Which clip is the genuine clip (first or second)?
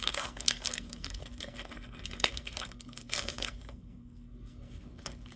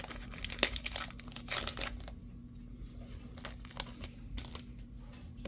second